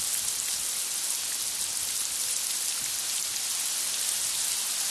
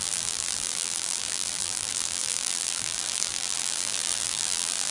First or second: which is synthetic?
second